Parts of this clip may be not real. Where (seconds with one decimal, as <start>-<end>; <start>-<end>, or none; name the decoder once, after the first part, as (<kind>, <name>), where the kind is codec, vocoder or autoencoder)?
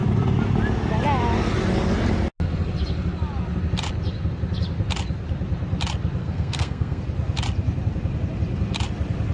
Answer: 6.2-7.0 (codec, SNAC)